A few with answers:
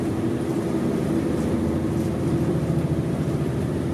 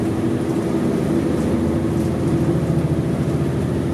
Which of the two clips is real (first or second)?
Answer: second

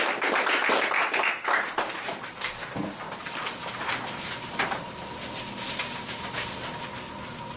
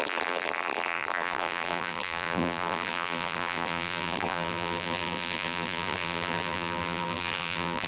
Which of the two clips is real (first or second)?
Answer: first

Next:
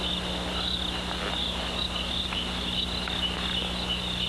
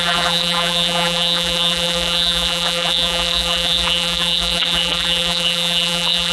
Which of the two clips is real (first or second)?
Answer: first